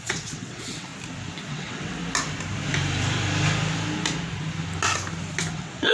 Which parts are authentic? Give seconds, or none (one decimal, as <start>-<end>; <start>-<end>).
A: 0.9-1.5; 2.0-5.5